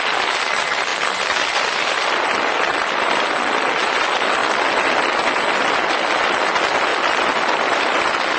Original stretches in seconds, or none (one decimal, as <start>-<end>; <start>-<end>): 0.0-0.9; 1.9-6.9; 8.0-8.4